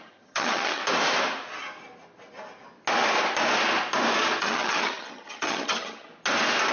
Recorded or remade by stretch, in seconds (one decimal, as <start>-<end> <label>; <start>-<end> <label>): 0.0-0.8 remade; 0.8-4.4 recorded; 4.4-6.1 remade; 6.1-6.7 recorded